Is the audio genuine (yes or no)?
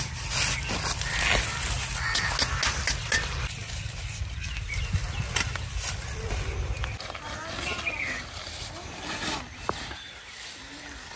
yes